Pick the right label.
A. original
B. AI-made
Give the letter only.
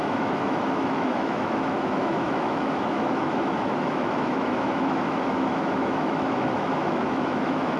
B